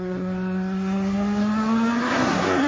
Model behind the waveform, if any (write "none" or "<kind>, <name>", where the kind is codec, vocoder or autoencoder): codec, SNAC